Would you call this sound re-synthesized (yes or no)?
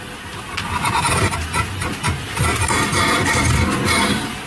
no